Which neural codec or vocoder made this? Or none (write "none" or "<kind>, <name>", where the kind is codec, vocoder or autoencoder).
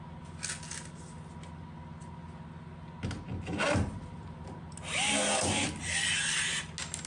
none